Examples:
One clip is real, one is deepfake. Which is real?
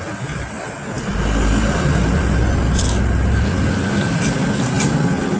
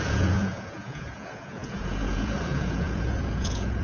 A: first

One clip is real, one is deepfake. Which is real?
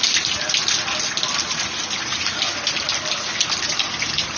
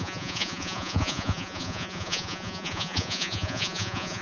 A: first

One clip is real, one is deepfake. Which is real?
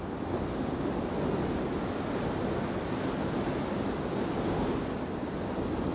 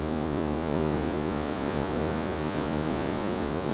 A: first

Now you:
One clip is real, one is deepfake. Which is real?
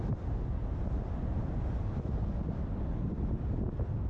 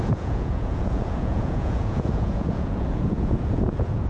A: first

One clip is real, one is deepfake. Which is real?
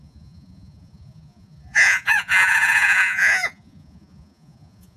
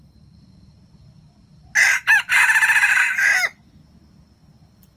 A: second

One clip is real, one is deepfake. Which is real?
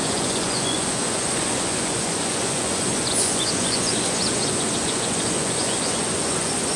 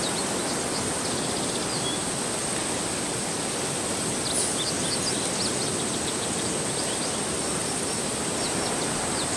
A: second